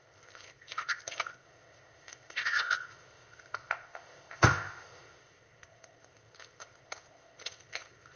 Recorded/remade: remade